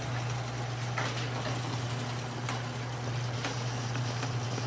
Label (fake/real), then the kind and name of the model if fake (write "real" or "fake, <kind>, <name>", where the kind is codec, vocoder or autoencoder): real